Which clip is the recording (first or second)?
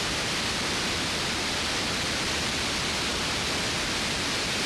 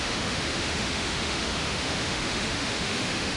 first